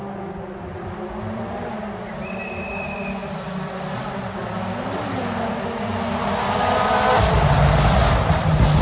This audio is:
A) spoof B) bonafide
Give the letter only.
B